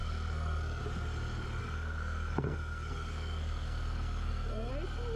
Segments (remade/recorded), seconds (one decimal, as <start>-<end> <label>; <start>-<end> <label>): 0.0-0.8 remade; 0.8-1.6 recorded; 1.6-4.7 remade; 4.7-5.2 recorded